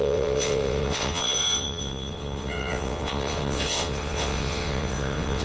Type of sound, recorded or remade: remade